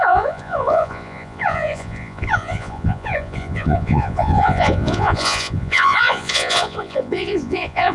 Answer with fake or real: fake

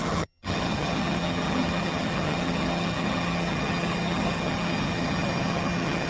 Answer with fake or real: fake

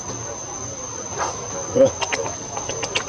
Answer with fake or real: real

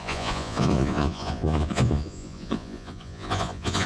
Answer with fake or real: fake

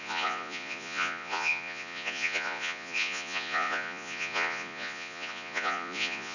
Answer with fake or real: fake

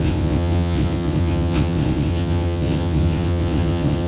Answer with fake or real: fake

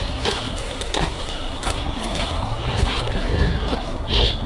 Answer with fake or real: fake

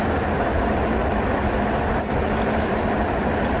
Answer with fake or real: real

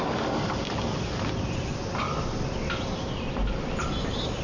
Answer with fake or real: real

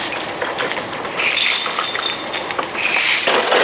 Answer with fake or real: real